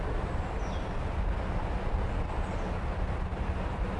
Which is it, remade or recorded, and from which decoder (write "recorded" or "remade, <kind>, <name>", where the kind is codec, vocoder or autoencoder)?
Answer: recorded